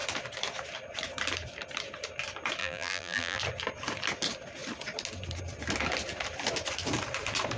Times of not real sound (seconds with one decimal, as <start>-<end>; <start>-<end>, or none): 2.6-3.4